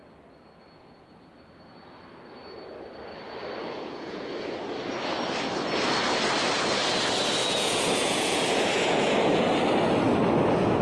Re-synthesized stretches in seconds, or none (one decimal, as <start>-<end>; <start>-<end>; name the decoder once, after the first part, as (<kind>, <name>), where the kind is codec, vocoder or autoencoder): 3.6-4.3 (vocoder, Vocos); 7.4-9.4